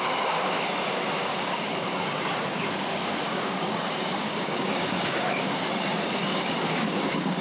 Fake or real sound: fake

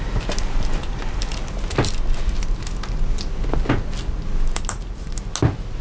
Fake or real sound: real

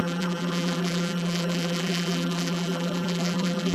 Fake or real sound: fake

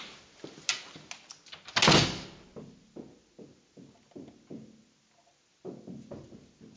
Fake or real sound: real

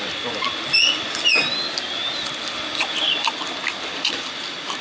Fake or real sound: real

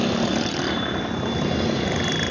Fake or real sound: real